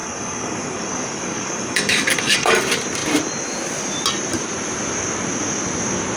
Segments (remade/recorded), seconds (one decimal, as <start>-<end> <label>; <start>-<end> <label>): 0.0-2.6 remade; 2.6-6.2 recorded

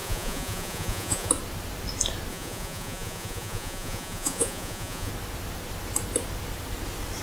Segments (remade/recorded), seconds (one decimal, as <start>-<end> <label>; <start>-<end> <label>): 0.0-1.3 remade; 1.3-2.3 recorded; 2.3-5.1 remade; 5.1-7.2 recorded

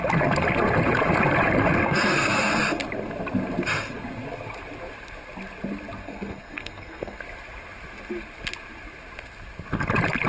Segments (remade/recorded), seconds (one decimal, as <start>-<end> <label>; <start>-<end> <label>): 0.0-1.8 recorded; 1.8-2.5 remade; 2.5-6.0 recorded; 6.0-7.2 remade; 7.2-10.3 recorded

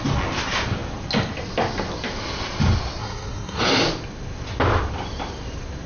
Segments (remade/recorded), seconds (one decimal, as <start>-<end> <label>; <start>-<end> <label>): 0.0-3.0 recorded; 3.0-3.6 remade; 3.6-5.9 recorded

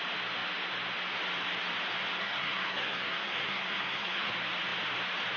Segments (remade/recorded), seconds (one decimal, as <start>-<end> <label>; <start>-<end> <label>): 0.0-2.2 recorded; 2.2-4.3 remade; 4.3-5.4 recorded

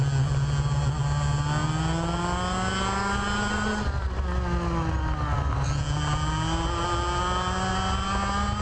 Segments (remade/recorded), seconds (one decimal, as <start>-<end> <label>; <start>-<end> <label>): 0.0-8.6 recorded